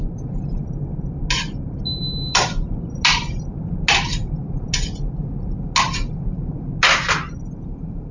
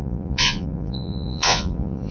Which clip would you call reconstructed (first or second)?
second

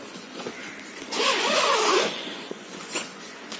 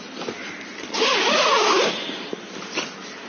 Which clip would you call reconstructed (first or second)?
first